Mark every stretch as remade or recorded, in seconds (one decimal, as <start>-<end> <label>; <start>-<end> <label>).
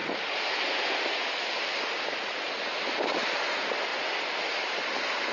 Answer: 0.0-5.3 recorded